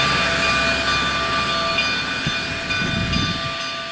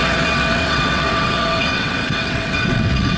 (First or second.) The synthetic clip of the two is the second